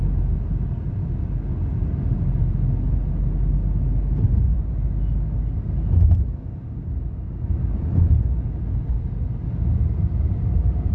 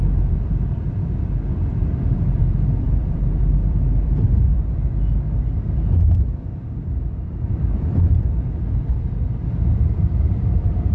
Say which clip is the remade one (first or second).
second